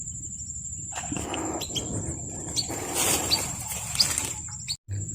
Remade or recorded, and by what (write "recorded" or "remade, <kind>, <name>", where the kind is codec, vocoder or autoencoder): recorded